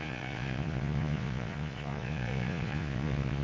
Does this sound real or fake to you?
fake